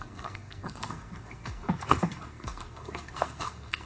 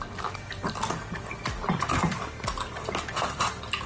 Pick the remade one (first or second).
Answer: first